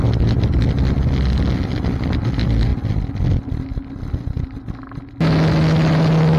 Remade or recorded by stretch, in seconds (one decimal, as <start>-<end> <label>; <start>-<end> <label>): 0.0-6.4 recorded